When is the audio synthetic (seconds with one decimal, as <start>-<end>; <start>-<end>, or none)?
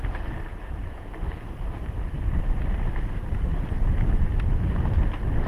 0.5-1.1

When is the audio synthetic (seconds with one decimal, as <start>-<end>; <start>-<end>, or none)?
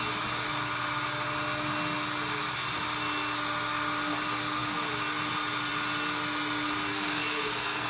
6.9-7.9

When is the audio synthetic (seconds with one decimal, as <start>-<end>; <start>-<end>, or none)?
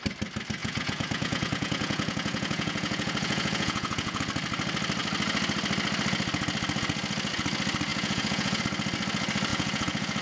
0.6-4.2; 7.9-8.6; 9.5-10.2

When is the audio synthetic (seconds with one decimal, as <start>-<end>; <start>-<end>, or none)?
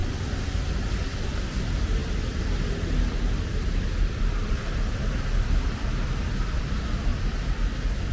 0.7-7.1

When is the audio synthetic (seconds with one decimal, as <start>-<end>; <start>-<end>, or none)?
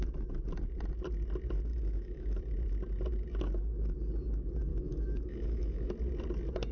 1.7-2.4; 4.7-5.9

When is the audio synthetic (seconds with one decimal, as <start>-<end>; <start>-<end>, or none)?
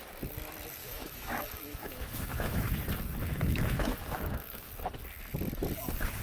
0.8-2.6; 3.2-4.7